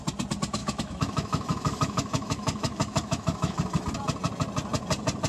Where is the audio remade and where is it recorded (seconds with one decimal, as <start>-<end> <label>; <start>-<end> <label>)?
0.0-0.6 recorded; 0.6-3.8 remade; 3.8-5.3 recorded